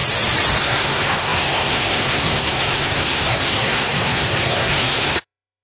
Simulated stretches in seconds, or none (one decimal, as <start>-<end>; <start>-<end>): 0.6-5.6